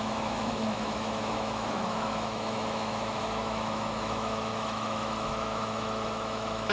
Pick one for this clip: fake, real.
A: fake